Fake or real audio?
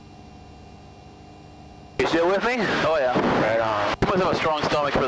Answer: real